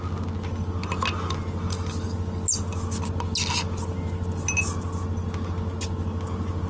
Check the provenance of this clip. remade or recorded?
recorded